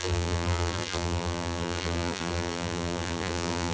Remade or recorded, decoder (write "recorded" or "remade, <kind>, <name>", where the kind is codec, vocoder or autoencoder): remade, vocoder, BigVGAN v2